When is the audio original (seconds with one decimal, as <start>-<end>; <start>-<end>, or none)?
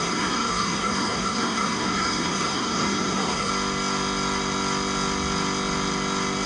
3.5-6.5